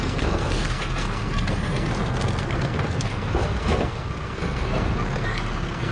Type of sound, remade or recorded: remade